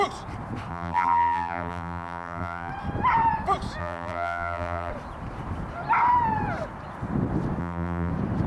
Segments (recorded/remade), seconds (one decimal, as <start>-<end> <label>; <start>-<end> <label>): 0.0-0.7 recorded; 0.7-2.7 remade; 2.7-3.8 recorded; 3.8-4.9 remade; 4.9-7.6 recorded; 7.6-8.1 remade; 8.1-8.5 recorded